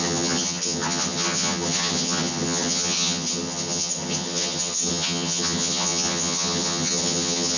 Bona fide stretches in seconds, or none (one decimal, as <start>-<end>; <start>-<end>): none